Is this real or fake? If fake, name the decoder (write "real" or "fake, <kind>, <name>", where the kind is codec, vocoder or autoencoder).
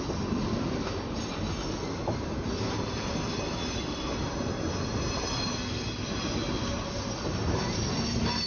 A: real